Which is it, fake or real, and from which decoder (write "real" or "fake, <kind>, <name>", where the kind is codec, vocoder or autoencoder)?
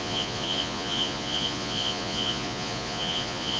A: fake, vocoder, Vocos